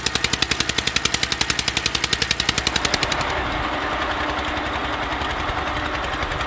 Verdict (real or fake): real